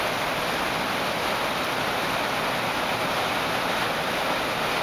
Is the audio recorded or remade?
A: recorded